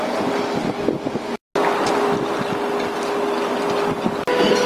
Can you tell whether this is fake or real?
real